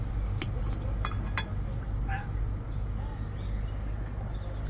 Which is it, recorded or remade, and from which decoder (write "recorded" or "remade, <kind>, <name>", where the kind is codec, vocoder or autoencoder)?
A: recorded